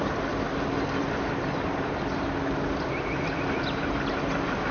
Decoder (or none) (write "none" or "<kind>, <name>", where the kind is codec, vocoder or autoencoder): none